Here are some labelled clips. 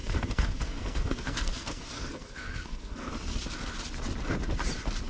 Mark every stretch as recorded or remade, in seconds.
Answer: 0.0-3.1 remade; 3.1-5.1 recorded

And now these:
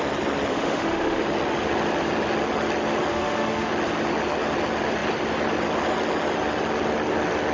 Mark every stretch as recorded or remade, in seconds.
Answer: 0.0-0.5 recorded; 0.5-1.2 remade; 1.2-3.1 recorded; 3.1-3.7 remade; 3.7-7.5 recorded